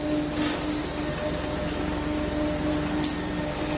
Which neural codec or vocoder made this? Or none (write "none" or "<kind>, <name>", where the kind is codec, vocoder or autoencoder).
none